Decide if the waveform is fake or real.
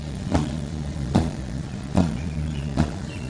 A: fake